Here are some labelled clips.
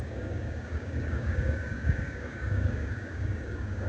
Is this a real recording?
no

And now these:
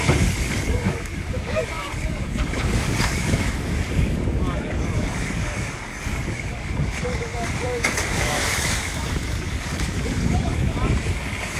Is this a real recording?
no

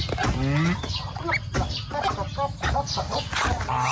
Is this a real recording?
yes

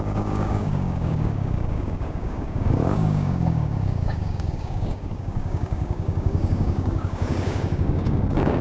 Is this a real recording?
no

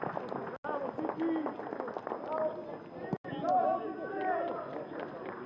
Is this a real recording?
yes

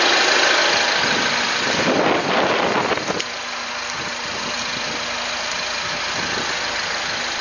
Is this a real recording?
yes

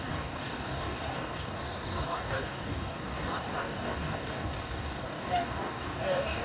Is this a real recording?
no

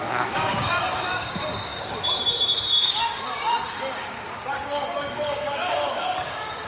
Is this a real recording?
no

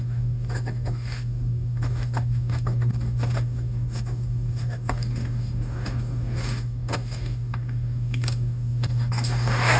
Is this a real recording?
no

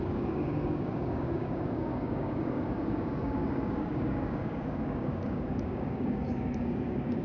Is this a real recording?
no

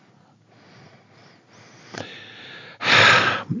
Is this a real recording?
yes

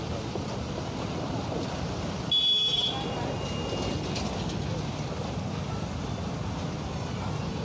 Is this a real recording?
yes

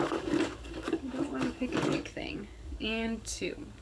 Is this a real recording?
no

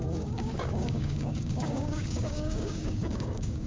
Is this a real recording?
no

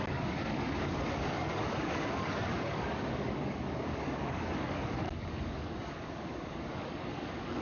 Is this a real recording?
no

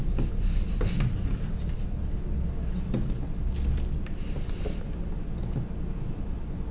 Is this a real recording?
yes